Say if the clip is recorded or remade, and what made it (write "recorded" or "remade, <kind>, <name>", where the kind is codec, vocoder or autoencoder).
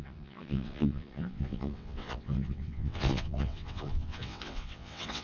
remade, vocoder, WaveNeXt